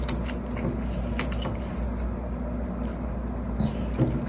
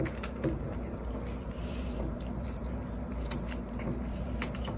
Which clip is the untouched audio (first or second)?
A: first